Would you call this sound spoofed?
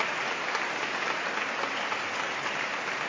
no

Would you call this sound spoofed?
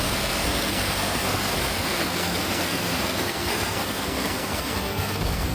yes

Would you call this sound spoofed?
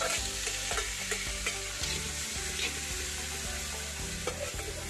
no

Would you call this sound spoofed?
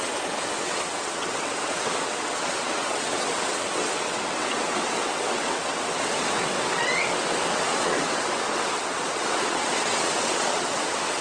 yes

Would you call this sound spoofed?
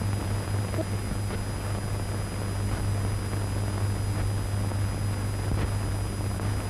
no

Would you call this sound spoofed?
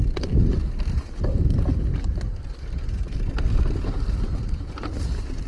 no